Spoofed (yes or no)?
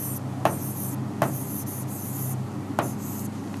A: no